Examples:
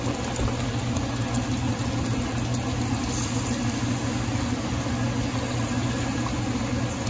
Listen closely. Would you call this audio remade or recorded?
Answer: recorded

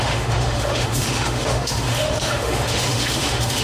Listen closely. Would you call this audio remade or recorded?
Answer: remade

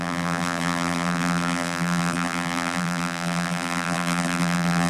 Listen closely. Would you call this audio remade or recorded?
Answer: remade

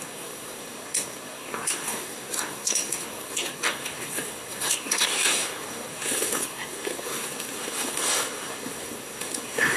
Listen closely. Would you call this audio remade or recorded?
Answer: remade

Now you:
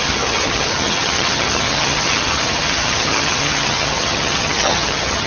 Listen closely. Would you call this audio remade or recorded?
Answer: remade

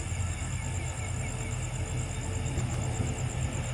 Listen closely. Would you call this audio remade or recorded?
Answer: recorded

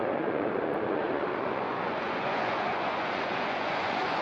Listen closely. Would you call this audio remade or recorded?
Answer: remade